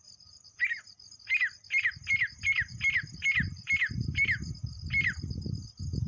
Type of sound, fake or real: real